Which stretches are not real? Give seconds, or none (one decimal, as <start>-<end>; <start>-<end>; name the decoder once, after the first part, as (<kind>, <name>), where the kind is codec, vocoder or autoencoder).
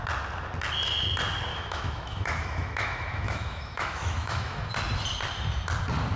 1.5-4.7 (autoencoder, DAC-VAE)